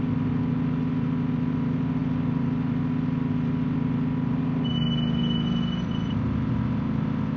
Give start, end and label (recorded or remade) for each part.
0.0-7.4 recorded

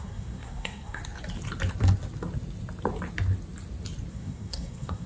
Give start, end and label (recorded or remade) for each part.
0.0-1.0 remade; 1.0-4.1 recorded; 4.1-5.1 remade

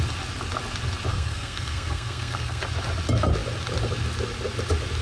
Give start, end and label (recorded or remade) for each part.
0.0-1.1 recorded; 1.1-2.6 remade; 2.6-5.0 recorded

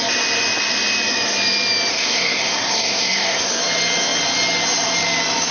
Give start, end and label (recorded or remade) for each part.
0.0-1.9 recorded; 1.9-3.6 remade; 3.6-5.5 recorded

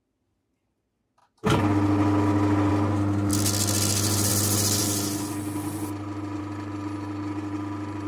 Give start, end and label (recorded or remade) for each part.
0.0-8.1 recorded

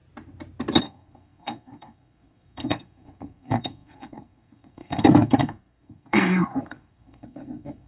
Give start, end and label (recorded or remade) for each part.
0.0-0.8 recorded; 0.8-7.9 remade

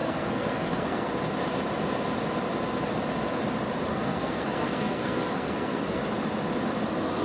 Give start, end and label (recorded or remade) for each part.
0.0-1.1 remade; 1.1-3.9 recorded; 3.9-6.0 remade; 6.0-7.2 recorded